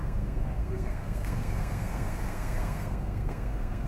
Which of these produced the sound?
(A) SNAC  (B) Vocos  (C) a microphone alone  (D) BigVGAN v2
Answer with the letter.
A